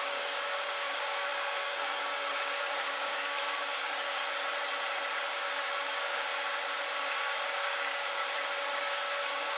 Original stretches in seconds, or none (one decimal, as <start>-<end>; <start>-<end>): 4.2-5.2; 6.3-6.9; 8.2-8.7